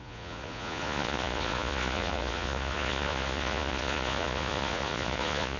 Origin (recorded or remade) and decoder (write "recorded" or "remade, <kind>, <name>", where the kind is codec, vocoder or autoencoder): remade, vocoder, Vocos